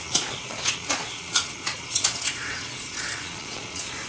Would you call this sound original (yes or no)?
no